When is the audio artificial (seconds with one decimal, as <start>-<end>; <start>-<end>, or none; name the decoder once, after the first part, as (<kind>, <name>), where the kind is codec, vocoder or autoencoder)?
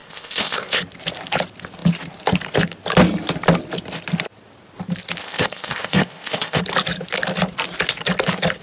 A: 0.0-0.8 (codec, ZipCodec); 5.2-6.6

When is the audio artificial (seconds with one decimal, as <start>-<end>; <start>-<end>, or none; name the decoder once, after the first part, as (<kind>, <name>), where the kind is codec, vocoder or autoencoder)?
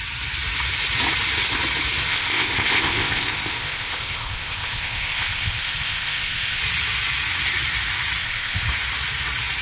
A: 2.1-6.6 (codec, ZipCodec); 8.2-8.7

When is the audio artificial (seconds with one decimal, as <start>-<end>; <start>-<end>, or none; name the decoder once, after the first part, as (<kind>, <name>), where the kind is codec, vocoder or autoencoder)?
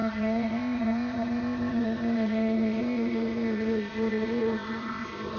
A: 0.0-5.4 (codec, ZipCodec)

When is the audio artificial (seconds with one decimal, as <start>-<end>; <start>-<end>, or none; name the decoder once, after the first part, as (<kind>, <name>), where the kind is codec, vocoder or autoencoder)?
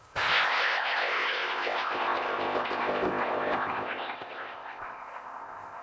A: 0.0-5.8 (codec, ZipCodec)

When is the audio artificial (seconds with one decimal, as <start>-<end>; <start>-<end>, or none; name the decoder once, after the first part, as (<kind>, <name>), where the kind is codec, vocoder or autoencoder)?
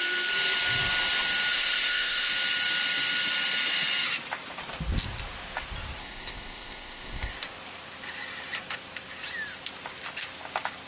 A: 1.5-2.3 (codec, ZipCodec); 6.0-7.3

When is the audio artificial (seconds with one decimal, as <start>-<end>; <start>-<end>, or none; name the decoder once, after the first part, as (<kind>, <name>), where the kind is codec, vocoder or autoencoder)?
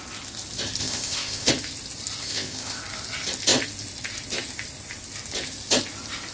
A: 0.8-1.5 (codec, ZipCodec); 2.2-2.8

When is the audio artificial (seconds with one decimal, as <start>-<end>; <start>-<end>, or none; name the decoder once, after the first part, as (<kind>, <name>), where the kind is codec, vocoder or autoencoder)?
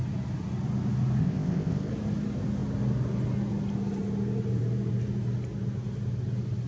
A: 1.2-1.9 (codec, ZipCodec)